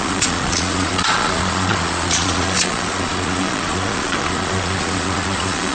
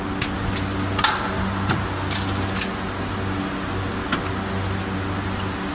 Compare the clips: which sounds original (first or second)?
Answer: second